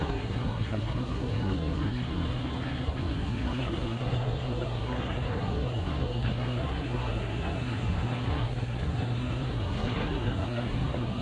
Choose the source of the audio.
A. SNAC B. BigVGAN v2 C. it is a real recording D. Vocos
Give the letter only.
A